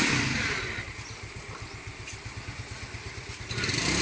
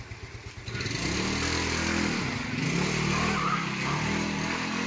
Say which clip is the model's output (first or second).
first